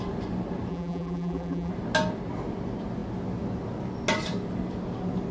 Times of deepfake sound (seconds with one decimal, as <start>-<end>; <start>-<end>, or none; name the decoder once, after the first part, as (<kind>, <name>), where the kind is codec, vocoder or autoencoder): 0.7-1.7 (vocoder, BigVGAN v2)